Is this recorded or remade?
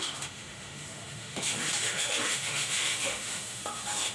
remade